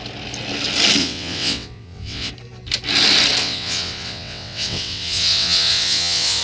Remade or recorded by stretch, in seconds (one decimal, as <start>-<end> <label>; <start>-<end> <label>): 0.0-1.0 recorded; 1.0-2.3 remade; 2.3-3.4 recorded; 3.4-6.4 remade